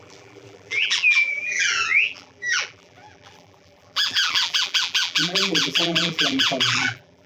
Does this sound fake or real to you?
fake